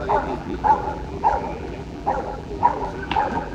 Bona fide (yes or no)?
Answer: no